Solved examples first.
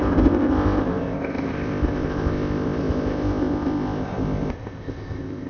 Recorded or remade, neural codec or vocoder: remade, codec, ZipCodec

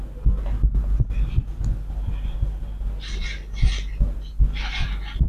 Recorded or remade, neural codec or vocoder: recorded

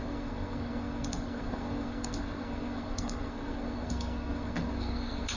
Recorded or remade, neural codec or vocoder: remade, codec, SNAC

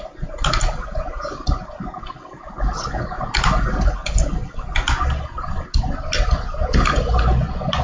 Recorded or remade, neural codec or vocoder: recorded